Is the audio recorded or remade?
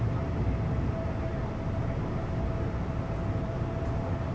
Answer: recorded